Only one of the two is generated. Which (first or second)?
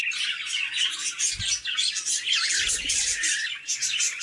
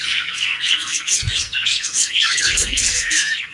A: second